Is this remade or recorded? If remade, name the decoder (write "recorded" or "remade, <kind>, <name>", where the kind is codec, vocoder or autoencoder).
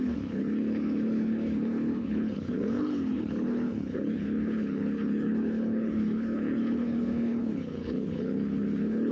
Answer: remade, codec, HILCodec